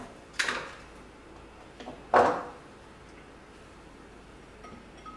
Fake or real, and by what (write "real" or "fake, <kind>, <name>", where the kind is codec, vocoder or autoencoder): real